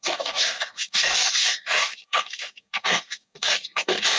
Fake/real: fake